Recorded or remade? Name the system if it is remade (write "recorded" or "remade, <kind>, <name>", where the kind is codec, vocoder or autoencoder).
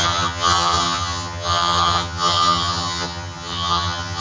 remade, vocoder, HiFi-GAN